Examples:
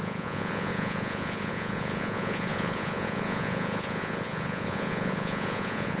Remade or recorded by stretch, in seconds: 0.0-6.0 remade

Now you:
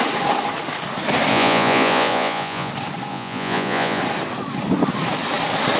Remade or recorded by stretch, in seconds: 0.0-1.3 recorded; 1.3-2.7 remade; 2.7-3.1 recorded; 3.1-4.0 remade; 4.0-5.8 recorded

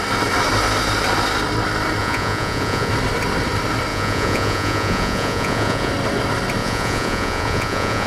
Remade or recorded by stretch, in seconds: 0.0-2.0 recorded; 2.0-2.9 remade; 2.9-3.9 recorded; 3.9-5.9 remade; 5.9-6.6 recorded; 6.6-8.1 remade

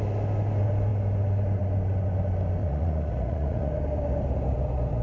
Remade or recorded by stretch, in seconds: 0.0-2.6 recorded; 2.6-3.7 remade; 3.7-5.0 recorded

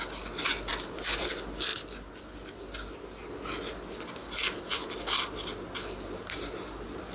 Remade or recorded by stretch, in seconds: 0.0-7.1 recorded

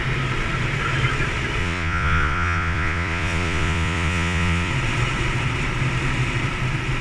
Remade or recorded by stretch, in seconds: 0.0-1.6 recorded; 1.6-4.7 remade; 4.7-7.0 recorded

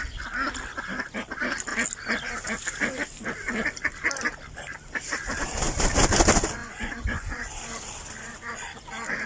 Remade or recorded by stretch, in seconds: 0.0-6.6 recorded; 6.6-7.4 remade; 7.4-9.3 recorded

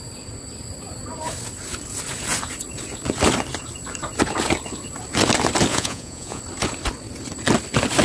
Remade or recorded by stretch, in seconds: 0.0-5.7 recorded; 5.7-6.4 remade; 6.4-8.0 recorded